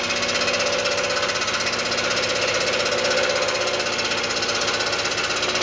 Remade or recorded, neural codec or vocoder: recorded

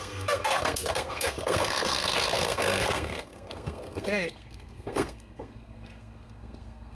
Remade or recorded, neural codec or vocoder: remade, codec, SNAC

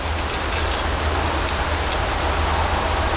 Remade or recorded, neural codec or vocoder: recorded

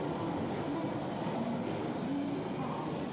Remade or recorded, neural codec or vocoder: recorded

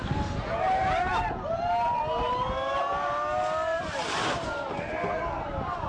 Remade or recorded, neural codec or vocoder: recorded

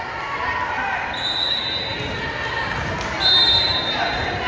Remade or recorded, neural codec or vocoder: recorded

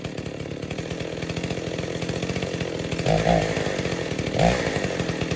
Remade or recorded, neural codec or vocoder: recorded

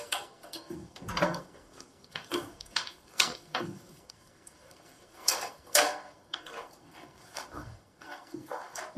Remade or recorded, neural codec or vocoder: remade, codec, SNAC